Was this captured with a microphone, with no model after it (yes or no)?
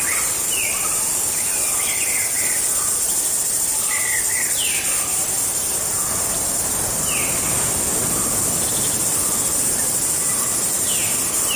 yes